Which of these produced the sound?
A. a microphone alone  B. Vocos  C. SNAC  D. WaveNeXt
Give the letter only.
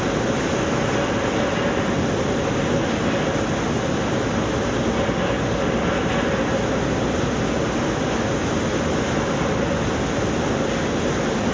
A